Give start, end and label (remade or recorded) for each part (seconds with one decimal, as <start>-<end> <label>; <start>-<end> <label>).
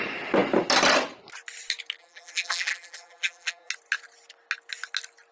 0.0-2.0 recorded; 2.0-3.7 remade; 3.7-5.3 recorded